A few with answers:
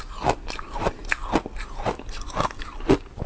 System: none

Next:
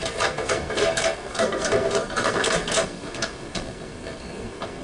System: codec, SNAC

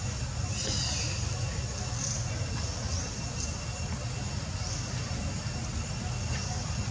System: none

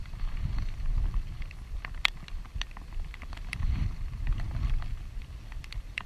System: vocoder, BigVGAN v2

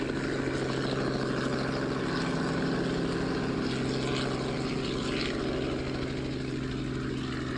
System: none